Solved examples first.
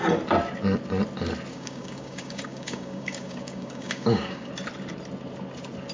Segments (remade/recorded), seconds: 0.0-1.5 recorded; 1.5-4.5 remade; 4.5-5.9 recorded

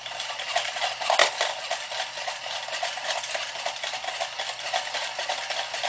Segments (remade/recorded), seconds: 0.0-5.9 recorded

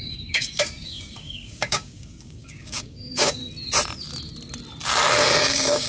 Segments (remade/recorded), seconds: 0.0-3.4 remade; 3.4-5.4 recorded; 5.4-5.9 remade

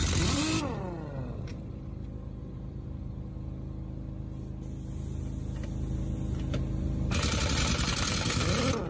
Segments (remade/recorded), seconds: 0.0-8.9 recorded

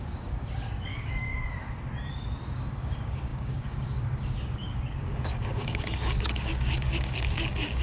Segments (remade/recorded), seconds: 0.0-1.3 remade; 1.3-2.1 recorded; 2.1-7.8 remade